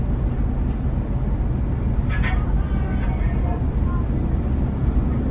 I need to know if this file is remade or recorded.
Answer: recorded